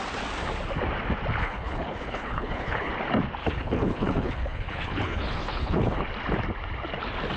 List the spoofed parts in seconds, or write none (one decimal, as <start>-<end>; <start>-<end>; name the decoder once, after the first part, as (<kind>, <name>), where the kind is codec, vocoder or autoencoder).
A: 1.4-2.9 (codec, HILCodec); 3.4-6.0